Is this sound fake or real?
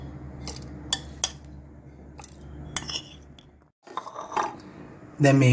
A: real